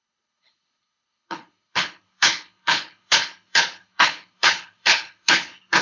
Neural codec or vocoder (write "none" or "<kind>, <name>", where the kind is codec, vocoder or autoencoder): codec, HILCodec